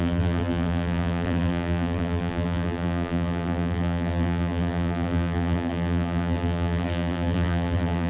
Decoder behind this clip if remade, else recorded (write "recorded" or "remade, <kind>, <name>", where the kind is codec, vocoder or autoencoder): remade, vocoder, BigVGAN v2